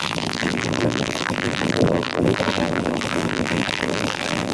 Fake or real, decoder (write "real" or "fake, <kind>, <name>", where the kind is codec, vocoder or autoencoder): fake, vocoder, BigVGAN v2